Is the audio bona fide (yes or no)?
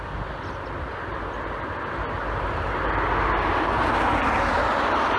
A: yes